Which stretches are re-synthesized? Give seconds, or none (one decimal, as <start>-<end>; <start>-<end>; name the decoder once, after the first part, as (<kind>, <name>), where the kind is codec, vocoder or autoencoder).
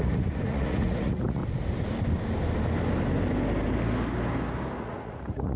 0.0-1.4 (vocoder, Vocos); 4.8-5.6